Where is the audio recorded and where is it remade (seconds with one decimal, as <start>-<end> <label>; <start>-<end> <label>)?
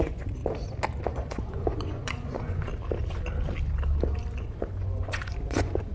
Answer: 0.0-0.4 remade; 0.4-1.1 recorded; 1.1-2.7 remade; 2.7-4.4 recorded; 4.4-5.9 remade